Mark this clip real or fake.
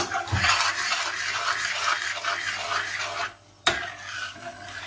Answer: fake